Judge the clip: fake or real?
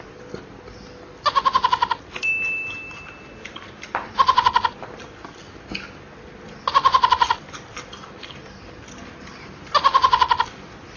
real